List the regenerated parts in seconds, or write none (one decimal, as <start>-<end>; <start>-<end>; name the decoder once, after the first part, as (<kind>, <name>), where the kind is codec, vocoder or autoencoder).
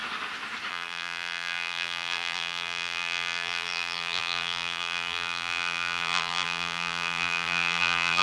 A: 0.7-8.2 (vocoder, BigVGAN v2)